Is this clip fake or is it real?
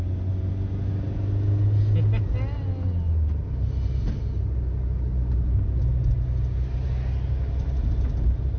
real